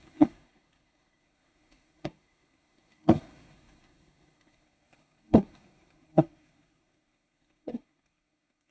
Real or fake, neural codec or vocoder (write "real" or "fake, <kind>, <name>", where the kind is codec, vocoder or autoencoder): fake, codec, SNAC